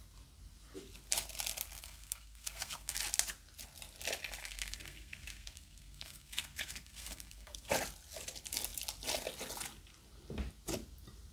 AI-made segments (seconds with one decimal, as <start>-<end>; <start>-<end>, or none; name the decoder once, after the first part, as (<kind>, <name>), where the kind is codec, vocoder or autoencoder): 1.8-3.0 (codec, SNAC); 4.4-7.7